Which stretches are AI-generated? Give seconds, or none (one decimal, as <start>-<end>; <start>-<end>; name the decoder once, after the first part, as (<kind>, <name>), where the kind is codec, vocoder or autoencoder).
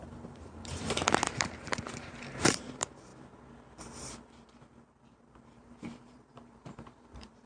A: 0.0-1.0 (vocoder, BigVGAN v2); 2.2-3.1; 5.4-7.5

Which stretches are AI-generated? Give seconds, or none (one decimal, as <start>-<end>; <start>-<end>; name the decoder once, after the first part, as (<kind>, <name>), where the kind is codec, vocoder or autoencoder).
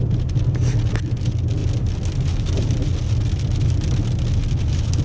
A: none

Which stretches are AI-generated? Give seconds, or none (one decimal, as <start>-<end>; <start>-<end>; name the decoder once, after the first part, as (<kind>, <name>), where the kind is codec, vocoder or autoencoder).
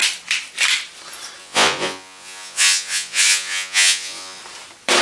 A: 1.4-4.4 (vocoder, Vocos)